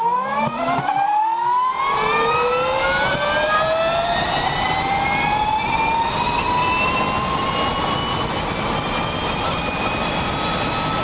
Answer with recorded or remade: recorded